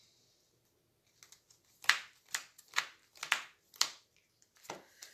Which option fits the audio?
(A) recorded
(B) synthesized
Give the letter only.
A